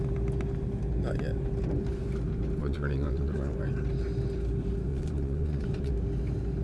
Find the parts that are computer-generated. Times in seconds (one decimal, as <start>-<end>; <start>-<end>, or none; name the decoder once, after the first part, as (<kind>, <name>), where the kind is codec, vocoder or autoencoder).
2.6-3.5 (vocoder, Vocos); 4.9-5.9